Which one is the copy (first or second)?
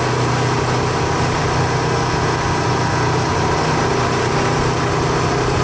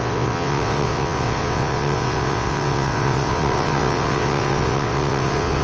second